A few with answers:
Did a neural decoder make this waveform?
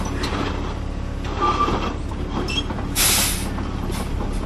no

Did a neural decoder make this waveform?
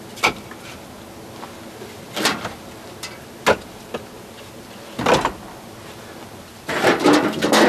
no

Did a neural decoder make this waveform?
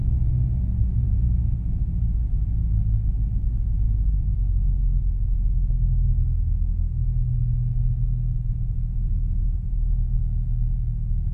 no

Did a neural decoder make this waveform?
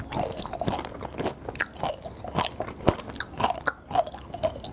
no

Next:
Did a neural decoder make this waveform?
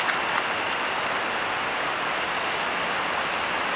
no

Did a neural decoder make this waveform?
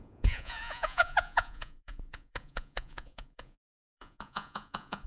yes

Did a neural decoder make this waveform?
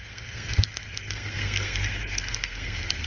yes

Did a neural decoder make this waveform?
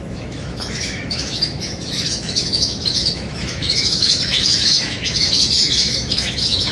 yes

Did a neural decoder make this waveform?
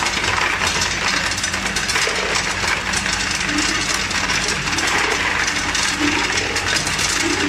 no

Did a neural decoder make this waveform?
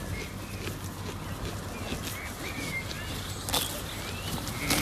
no